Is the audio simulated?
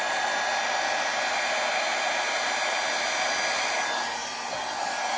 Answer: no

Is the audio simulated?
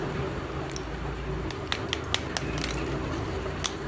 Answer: no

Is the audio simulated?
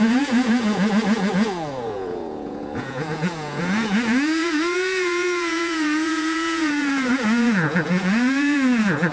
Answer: yes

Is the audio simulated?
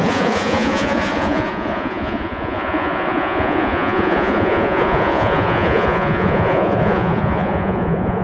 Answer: yes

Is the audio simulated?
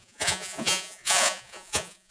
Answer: yes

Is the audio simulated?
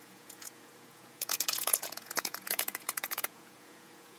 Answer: yes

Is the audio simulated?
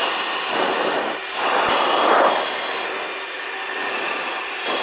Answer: no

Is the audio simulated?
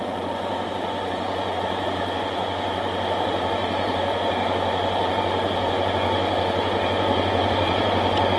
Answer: yes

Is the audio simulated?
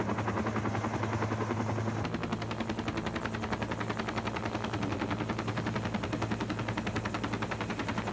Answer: no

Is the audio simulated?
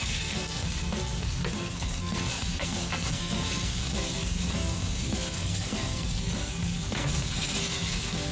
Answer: yes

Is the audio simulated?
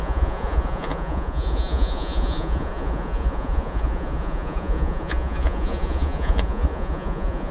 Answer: yes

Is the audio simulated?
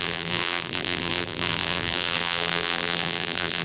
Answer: yes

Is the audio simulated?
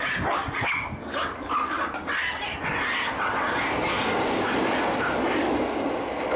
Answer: no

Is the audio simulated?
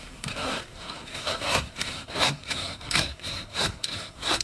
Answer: yes